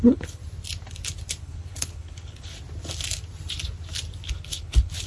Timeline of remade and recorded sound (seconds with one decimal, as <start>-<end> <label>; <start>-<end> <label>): 0.0-0.4 remade; 0.4-1.4 recorded; 1.4-2.5 remade; 2.5-4.3 recorded; 4.3-5.1 remade